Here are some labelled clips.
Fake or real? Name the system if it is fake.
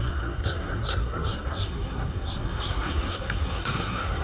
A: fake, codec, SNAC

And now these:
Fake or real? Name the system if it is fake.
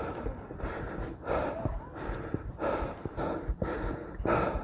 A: real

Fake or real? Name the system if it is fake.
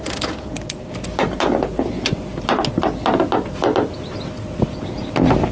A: real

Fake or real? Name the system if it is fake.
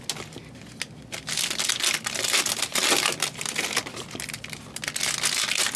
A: real